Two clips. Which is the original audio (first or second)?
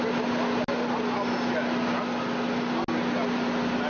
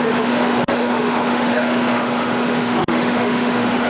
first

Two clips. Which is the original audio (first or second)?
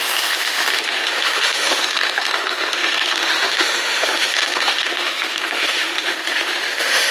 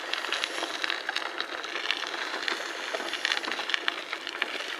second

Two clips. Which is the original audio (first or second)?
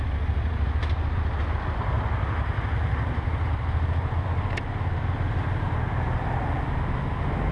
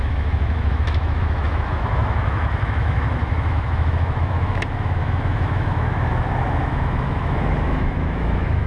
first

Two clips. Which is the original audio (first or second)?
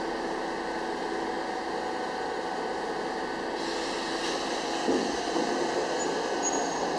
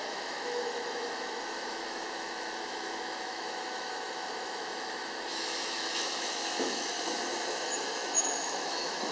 first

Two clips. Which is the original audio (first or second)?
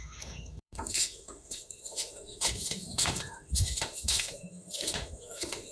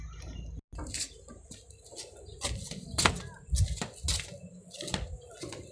second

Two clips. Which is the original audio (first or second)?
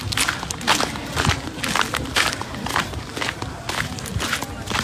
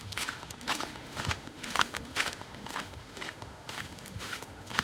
first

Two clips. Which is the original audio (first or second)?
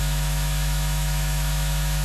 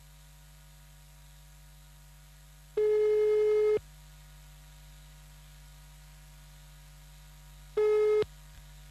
second